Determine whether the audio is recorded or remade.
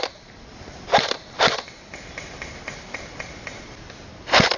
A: recorded